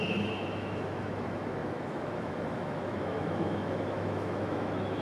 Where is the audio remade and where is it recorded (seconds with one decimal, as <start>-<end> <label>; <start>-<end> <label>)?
0.0-5.0 remade